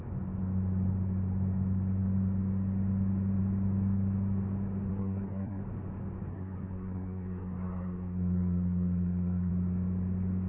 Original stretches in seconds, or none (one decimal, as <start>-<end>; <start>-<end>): 0.0-4.9; 5.6-6.3; 9.5-10.5